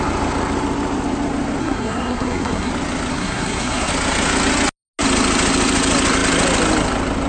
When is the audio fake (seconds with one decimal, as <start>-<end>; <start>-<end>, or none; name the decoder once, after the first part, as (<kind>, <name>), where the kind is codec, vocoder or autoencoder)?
1.6-2.7 (codec, SNAC); 3.1-3.9